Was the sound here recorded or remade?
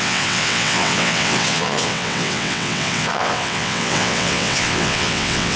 remade